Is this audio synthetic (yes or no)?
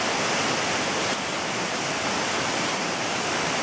yes